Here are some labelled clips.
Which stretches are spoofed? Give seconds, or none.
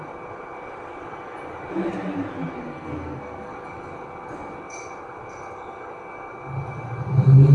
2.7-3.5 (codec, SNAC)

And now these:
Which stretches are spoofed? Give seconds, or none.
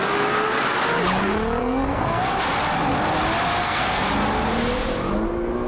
1.6-2.2 (codec, SNAC); 3.6-4.1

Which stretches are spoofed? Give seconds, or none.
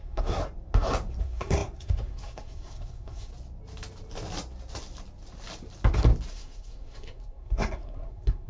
0.0-0.4 (codec, SNAC); 1.2-3.3; 6.3-8.5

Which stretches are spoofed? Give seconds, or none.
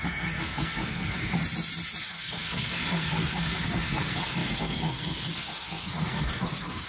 0.0-1.4 (codec, SNAC); 2.0-6.9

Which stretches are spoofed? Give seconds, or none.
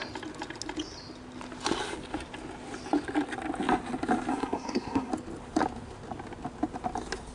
4.3-5.1 (codec, SNAC)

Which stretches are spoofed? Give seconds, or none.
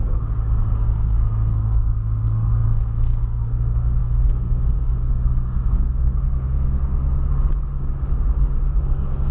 0.0-7.0 (codec, SNAC); 8.8-9.3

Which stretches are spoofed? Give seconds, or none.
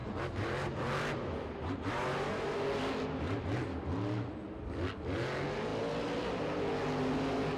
none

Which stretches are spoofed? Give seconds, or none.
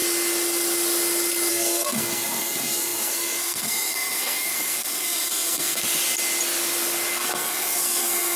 1.5-5.8 (codec, SNAC); 7.1-8.4